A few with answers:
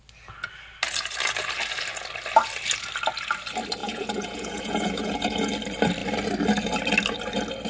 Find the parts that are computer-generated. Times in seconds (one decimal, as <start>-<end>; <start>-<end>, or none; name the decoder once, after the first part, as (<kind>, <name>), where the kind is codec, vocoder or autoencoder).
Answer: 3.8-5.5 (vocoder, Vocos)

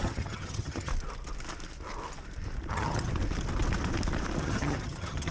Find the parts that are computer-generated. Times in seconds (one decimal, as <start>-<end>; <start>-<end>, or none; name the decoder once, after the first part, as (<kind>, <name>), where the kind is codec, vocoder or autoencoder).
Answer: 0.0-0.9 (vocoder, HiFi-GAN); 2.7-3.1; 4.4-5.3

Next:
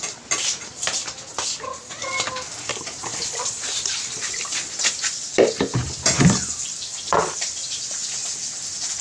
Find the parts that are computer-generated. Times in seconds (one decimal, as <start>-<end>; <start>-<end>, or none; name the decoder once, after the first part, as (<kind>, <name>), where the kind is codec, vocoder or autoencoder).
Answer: none